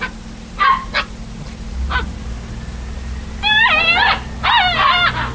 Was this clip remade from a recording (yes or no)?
no